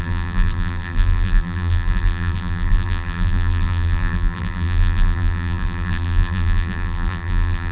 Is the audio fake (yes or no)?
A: yes